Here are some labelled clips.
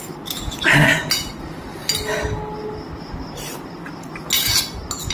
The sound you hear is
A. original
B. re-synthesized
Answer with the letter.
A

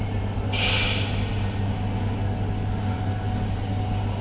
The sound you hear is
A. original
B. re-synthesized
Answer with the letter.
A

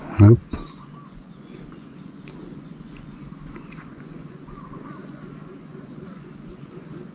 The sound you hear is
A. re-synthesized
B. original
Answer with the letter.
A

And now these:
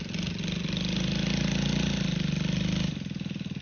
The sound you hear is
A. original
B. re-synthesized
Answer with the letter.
A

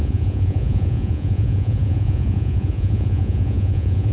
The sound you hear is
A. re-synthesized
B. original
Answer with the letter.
A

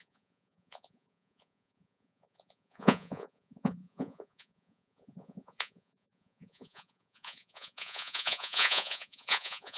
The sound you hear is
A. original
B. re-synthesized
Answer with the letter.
B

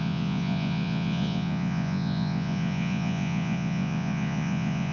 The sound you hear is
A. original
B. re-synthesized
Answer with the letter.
B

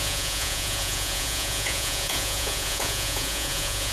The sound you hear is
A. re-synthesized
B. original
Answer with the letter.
A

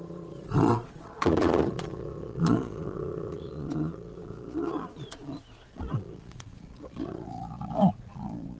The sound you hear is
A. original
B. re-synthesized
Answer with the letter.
B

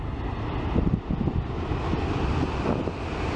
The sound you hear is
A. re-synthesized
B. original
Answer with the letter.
B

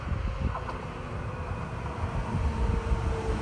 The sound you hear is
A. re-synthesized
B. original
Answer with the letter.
B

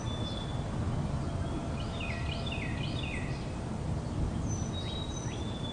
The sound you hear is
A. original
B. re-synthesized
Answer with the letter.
A